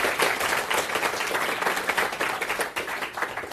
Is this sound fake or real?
real